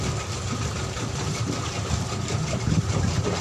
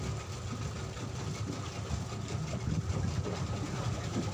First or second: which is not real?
first